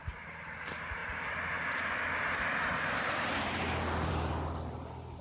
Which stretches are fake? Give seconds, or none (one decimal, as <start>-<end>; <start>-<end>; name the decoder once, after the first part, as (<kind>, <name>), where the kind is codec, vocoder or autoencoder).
none